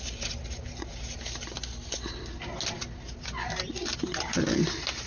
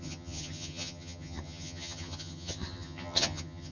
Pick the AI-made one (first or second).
second